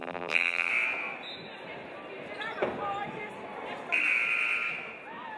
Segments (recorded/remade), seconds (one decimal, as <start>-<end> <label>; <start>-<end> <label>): 0.0-0.7 remade; 0.7-5.4 recorded